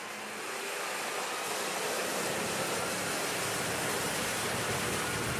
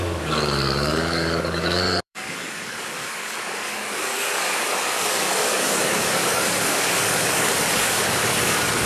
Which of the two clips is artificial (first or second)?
second